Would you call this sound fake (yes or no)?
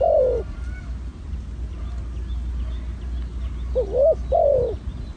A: no